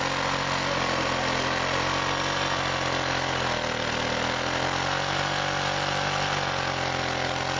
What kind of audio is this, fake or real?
real